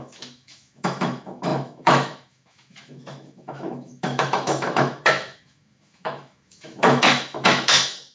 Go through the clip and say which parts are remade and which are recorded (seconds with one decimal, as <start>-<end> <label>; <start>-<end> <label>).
0.0-8.1 remade

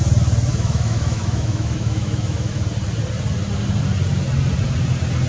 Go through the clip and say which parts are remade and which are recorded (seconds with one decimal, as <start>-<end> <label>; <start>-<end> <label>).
0.0-0.5 recorded; 0.5-2.6 remade; 2.6-5.3 recorded

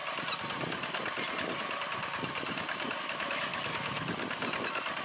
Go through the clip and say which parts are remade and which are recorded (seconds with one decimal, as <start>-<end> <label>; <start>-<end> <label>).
0.0-3.0 recorded; 3.0-3.5 remade; 3.5-5.0 recorded